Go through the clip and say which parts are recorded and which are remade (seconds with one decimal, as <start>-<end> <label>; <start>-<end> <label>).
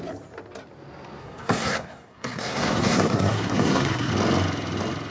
0.0-1.2 recorded; 1.2-4.1 remade; 4.1-5.1 recorded